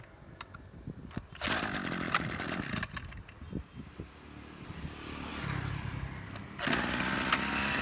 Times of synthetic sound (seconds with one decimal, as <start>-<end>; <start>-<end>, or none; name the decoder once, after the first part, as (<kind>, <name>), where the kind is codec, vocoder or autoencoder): none